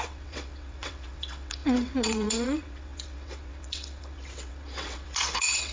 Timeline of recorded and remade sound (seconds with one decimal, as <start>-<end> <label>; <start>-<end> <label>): 0.0-5.7 remade